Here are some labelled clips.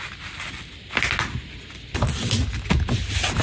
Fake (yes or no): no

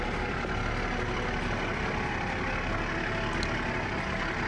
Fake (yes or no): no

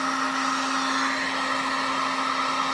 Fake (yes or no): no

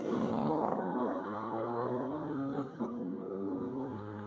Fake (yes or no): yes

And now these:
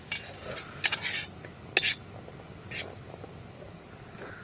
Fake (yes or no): no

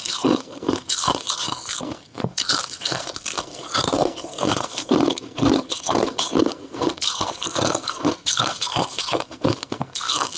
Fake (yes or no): yes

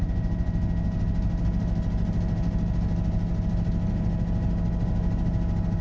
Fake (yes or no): no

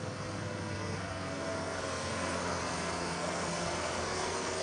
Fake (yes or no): yes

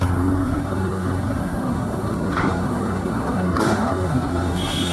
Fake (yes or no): yes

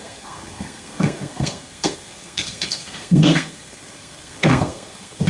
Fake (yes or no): yes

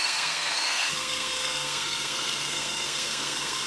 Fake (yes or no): yes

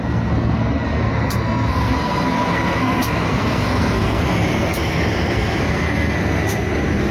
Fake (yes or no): yes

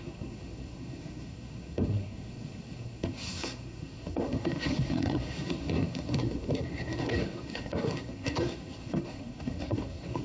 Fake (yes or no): yes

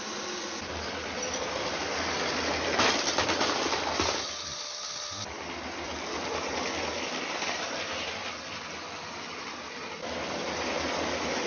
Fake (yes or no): no